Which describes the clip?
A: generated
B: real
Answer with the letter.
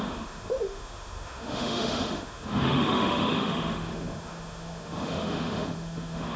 A